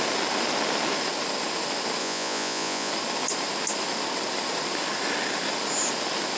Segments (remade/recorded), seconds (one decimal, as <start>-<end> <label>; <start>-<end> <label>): 0.0-2.0 recorded; 2.0-2.9 remade; 2.9-6.4 recorded